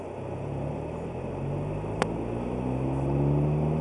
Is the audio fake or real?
real